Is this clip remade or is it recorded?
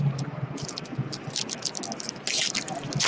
recorded